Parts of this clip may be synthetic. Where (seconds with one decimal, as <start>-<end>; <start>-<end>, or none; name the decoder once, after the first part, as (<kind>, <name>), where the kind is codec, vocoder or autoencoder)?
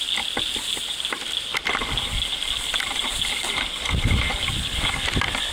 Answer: none